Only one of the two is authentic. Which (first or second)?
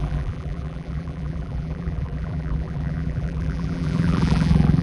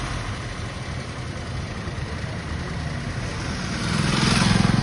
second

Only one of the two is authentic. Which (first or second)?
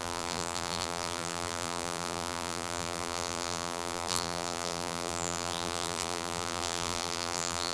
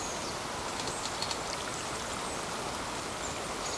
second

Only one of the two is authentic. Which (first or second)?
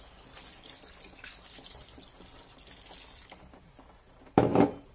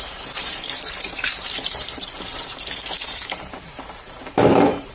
first